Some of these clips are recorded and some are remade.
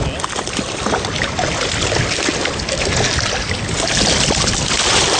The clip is recorded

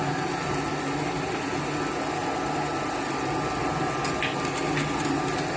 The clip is recorded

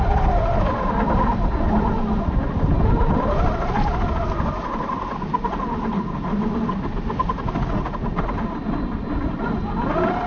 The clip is recorded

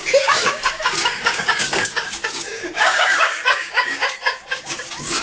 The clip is remade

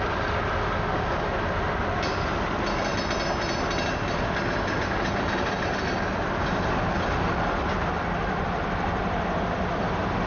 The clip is recorded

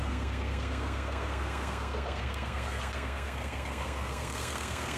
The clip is remade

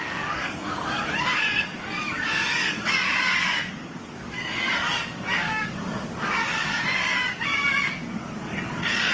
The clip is remade